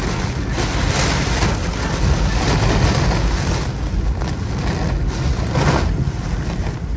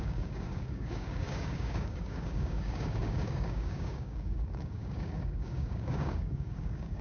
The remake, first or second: second